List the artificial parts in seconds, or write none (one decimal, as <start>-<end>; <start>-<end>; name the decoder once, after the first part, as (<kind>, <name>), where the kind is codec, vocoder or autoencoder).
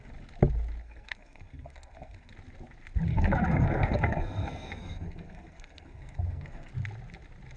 0.8-2.3 (codec, SNAC); 3.1-6.7